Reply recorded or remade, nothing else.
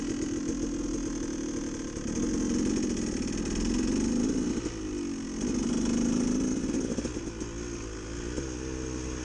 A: recorded